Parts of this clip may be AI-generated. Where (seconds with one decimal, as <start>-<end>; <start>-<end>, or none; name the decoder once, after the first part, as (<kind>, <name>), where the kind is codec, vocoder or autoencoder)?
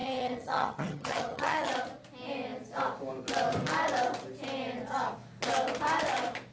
0.0-1.7 (vocoder, HiFi-GAN)